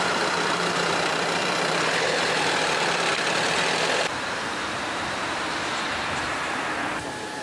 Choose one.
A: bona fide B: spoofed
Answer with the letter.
B